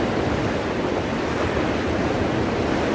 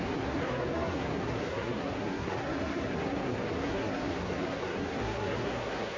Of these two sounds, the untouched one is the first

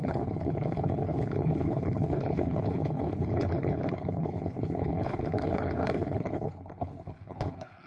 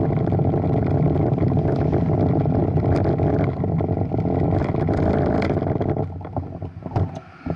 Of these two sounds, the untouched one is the second